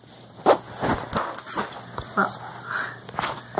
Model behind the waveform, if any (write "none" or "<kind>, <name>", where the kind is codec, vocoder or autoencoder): none